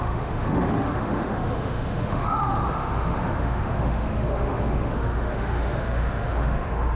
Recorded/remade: remade